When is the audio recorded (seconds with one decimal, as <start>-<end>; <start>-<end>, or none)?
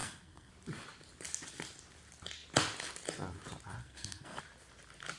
0.5-3.8; 4.4-5.2